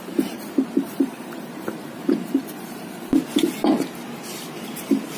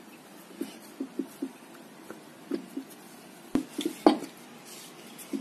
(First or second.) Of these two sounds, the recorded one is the second